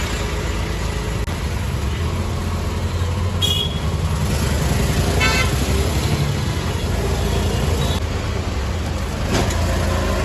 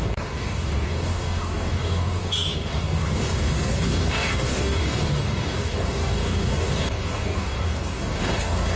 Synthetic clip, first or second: second